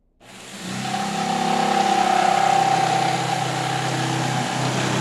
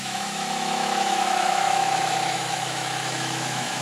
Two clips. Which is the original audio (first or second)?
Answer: first